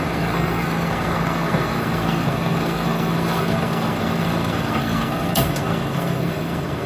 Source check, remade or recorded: remade